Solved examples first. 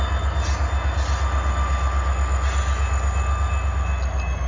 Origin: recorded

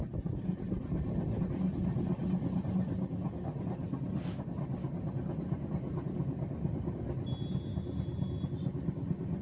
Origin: recorded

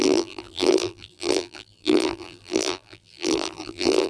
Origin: remade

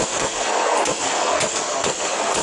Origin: remade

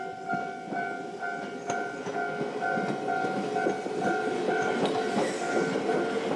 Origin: recorded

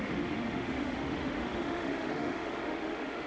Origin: remade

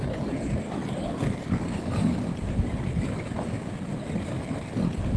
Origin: recorded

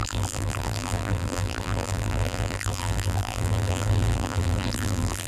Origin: remade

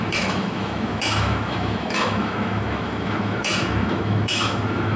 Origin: remade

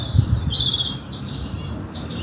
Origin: remade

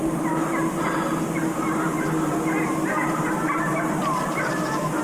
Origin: recorded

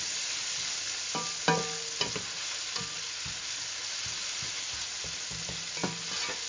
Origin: recorded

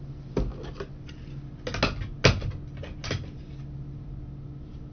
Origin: recorded